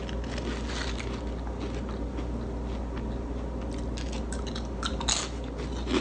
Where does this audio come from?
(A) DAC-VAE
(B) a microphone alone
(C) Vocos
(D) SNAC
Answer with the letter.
B